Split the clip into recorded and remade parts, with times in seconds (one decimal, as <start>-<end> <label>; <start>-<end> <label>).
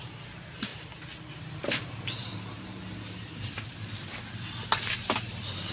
0.0-0.7 remade; 0.7-1.3 recorded; 1.3-2.3 remade; 2.3-5.7 recorded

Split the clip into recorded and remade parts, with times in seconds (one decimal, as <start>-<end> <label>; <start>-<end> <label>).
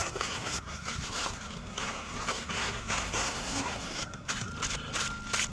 0.0-4.5 remade; 4.5-5.5 recorded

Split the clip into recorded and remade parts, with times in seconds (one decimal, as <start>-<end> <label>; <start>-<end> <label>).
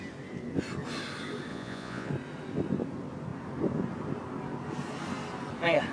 0.0-1.5 recorded; 1.5-2.1 remade; 2.1-5.9 recorded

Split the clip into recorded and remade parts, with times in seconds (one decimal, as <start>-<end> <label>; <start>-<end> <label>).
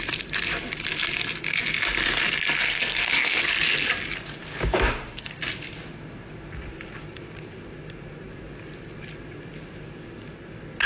0.0-2.5 recorded; 2.5-3.4 remade; 3.4-4.7 recorded; 4.7-5.4 remade; 5.4-10.9 recorded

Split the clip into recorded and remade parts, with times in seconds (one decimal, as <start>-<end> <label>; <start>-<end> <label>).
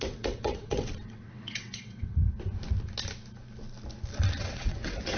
0.0-2.2 remade; 2.2-4.4 recorded; 4.4-5.2 remade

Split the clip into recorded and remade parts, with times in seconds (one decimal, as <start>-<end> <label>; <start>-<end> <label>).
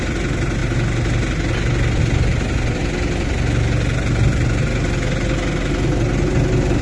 0.0-6.8 recorded